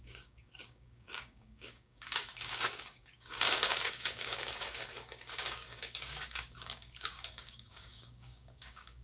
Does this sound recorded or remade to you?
remade